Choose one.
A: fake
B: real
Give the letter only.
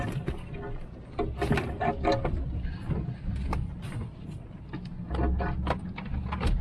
B